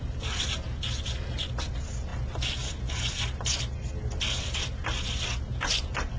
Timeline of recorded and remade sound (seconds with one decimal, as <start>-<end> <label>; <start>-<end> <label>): 0.0-6.2 recorded